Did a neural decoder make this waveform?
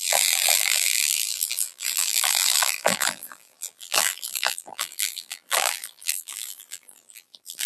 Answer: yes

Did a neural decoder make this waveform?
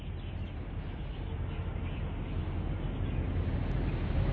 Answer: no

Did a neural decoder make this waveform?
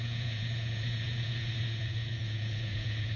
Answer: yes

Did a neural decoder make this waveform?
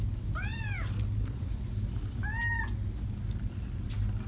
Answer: no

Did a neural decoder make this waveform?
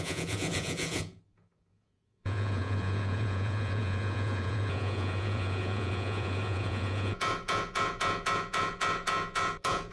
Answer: yes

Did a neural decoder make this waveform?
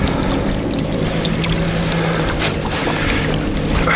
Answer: no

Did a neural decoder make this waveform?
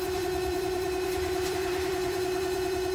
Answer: yes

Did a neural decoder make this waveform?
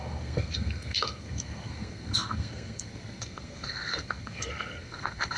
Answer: yes